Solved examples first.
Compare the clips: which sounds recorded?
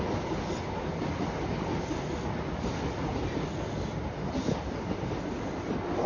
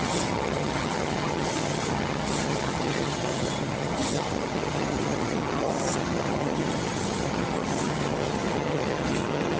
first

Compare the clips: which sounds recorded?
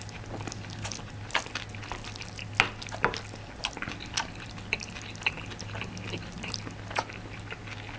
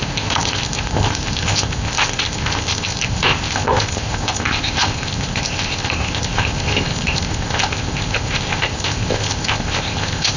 first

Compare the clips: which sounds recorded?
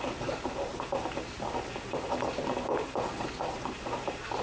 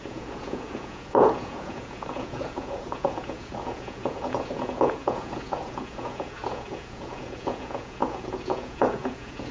first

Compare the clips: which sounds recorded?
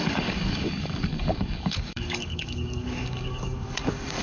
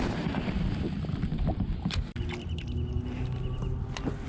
second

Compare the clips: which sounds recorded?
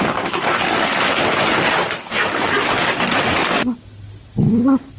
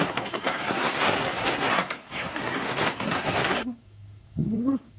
first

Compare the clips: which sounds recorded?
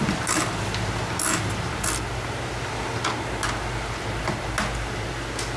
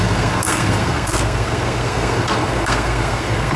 first